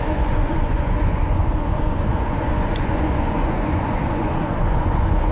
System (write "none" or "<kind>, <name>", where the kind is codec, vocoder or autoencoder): vocoder, Vocos